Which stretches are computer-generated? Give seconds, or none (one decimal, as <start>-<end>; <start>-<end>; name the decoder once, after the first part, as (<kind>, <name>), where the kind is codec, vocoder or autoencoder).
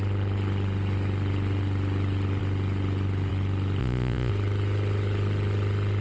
3.8-4.3 (vocoder, Vocos)